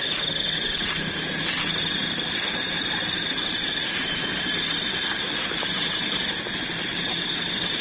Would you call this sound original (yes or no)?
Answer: yes